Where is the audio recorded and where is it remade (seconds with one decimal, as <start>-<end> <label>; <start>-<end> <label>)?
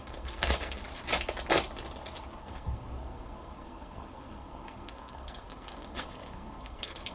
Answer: 0.0-0.8 remade; 0.8-2.4 recorded; 2.4-7.1 remade